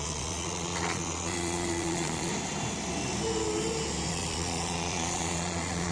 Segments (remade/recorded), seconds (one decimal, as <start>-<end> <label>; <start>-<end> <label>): 0.0-2.3 remade; 2.3-4.1 recorded; 4.1-5.9 remade